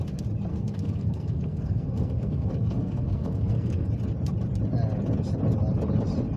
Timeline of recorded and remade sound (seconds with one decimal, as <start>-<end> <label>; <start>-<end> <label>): 0.0-0.5 recorded; 0.5-3.9 remade; 3.9-6.4 recorded

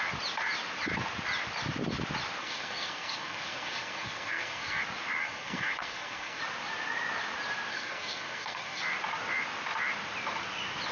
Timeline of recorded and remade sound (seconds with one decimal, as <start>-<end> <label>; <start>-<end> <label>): 0.0-2.4 recorded; 2.4-4.8 remade; 4.8-5.2 recorded; 5.2-6.4 remade; 6.4-7.7 recorded; 7.7-8.8 remade; 8.8-10.9 recorded

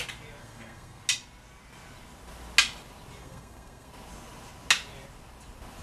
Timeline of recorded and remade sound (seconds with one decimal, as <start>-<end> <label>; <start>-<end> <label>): 0.0-0.4 recorded; 0.4-1.0 remade; 1.0-3.2 recorded; 3.2-3.9 remade; 3.9-5.8 recorded